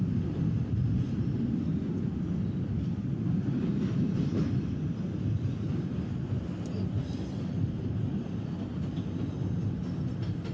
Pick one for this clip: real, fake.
real